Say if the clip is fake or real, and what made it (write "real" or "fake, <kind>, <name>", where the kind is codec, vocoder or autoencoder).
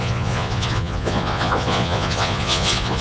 fake, vocoder, Vocos